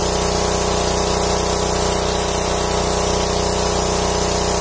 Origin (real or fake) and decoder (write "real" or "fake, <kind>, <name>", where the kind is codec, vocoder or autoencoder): real